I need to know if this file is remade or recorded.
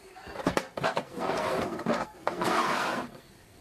remade